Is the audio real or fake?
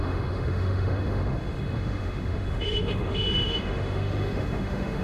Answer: fake